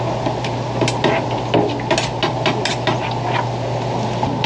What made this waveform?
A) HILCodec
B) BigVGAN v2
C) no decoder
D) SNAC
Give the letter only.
C